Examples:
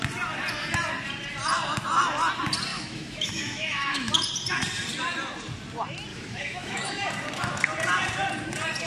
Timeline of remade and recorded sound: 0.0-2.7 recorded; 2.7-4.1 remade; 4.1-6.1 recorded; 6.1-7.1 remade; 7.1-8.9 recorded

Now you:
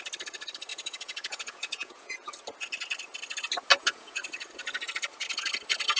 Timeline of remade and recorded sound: 0.0-0.7 recorded; 0.7-2.3 remade; 2.3-3.7 recorded; 3.7-4.2 remade; 4.2-6.0 recorded

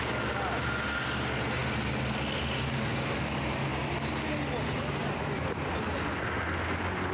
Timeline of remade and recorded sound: 0.0-7.1 recorded